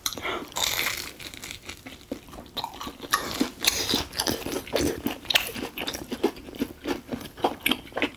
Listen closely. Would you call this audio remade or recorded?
remade